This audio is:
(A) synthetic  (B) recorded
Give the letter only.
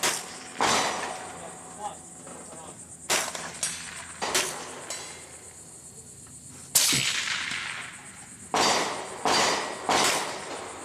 B